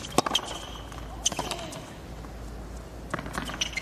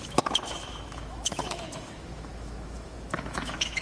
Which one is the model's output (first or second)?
second